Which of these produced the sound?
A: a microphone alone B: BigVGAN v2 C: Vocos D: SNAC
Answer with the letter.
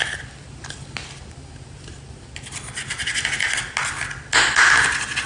A